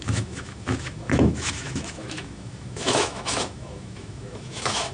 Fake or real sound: fake